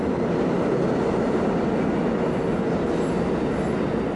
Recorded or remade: recorded